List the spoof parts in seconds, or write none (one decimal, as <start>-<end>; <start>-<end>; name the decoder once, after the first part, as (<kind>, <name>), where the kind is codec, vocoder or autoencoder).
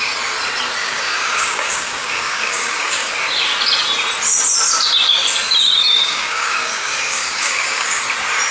0.8-3.1 (codec, DAC); 5.8-8.0